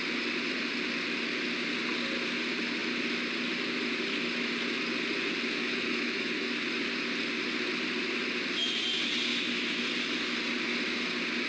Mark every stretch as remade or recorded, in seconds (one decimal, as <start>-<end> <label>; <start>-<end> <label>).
0.0-5.6 recorded; 5.6-6.5 remade; 6.5-9.3 recorded; 9.3-9.8 remade; 9.8-11.5 recorded